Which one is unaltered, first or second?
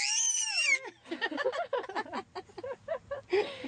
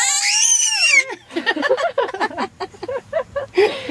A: first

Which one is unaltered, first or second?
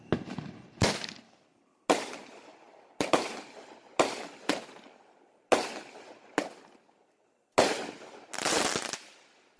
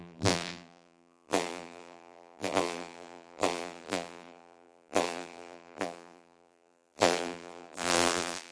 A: first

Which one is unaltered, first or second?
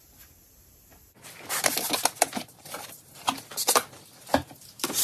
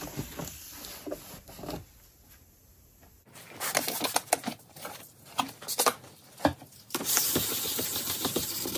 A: second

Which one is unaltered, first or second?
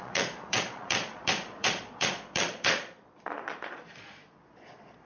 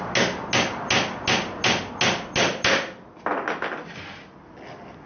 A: second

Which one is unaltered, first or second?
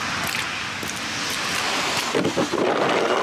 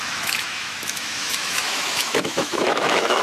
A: first